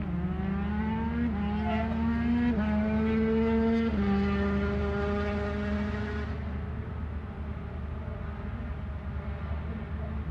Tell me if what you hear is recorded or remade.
recorded